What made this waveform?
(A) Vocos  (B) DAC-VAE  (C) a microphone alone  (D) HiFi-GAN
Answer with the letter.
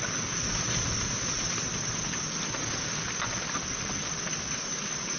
C